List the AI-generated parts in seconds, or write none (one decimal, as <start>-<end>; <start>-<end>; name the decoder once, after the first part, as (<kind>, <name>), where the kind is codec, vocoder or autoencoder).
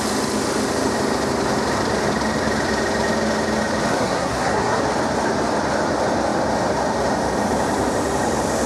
3.9-4.8 (codec, SNAC)